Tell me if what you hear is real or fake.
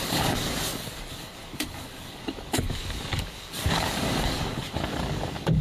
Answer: fake